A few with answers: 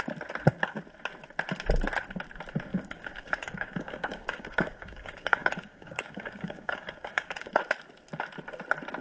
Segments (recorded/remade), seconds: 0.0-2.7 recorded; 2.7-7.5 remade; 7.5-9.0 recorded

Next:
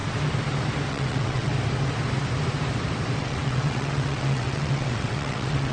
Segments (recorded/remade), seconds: 0.0-0.9 recorded; 0.9-1.5 remade; 1.5-3.2 recorded; 3.2-5.7 remade

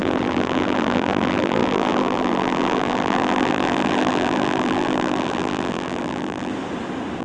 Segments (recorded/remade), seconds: 0.0-6.5 remade; 6.5-7.2 recorded

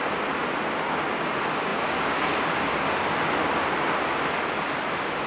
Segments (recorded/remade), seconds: 0.0-5.3 recorded

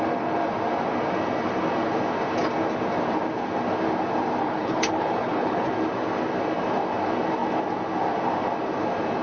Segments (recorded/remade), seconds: 0.0-4.4 recorded; 4.4-5.7 remade; 5.7-9.2 recorded

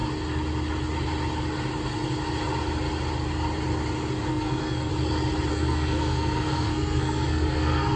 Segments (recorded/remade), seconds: 0.0-4.3 recorded; 4.3-4.9 remade; 4.9-5.5 recorded; 5.5-8.0 remade

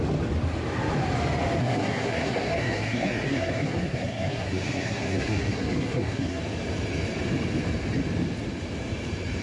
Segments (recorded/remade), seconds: 0.0-1.6 recorded; 1.6-6.4 remade; 6.4-9.4 recorded

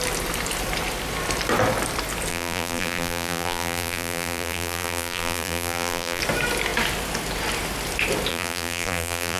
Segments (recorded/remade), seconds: 0.0-2.3 recorded; 2.3-6.2 remade; 6.2-8.3 recorded; 8.3-9.4 remade